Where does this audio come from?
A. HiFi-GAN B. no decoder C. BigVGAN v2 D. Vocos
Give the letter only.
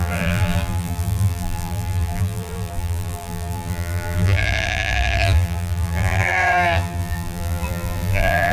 C